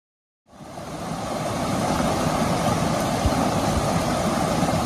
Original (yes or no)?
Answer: yes